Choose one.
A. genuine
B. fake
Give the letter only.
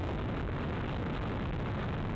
A